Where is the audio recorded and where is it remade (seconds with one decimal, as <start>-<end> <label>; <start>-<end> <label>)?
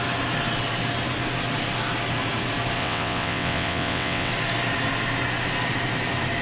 0.0-2.8 recorded; 2.8-4.3 remade; 4.3-6.4 recorded